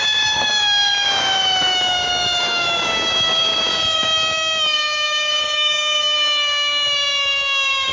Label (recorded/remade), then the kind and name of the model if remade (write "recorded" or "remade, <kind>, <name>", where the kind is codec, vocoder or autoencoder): remade, codec, DAC